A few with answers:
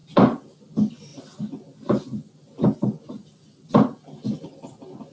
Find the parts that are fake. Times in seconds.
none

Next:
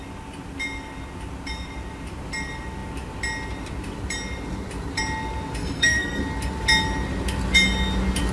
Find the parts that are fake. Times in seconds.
5.6-6.2 (codec, SNAC)